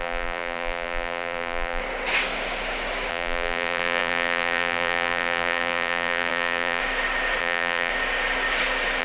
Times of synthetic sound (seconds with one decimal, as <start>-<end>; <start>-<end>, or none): 0.0-1.8; 3.1-6.8; 7.4-7.9